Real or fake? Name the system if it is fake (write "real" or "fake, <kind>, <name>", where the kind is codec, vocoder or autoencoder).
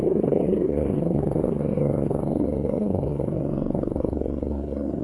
fake, codec, SNAC